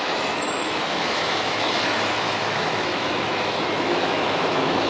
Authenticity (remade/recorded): remade